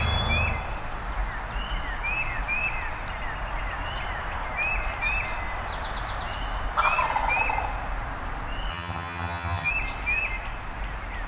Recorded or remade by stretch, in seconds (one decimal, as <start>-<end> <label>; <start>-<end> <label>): 0.0-8.7 recorded; 8.7-9.7 remade; 9.7-11.3 recorded